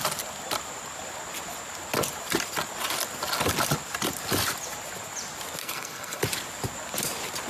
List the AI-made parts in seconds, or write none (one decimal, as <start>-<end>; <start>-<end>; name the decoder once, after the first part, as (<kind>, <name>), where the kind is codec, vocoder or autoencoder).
5.6-6.2 (codec, SNAC)